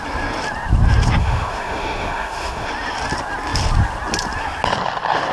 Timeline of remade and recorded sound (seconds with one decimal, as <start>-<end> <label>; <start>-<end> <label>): 0.0-1.2 recorded; 1.2-2.7 remade; 2.7-5.3 recorded